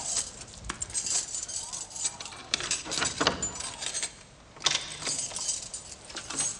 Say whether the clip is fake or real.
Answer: real